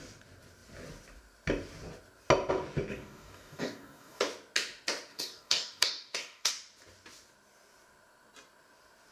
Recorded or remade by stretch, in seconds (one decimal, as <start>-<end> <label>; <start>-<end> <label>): 0.0-2.9 recorded; 2.9-4.2 remade; 4.2-5.1 recorded; 5.1-6.5 remade; 6.5-9.1 recorded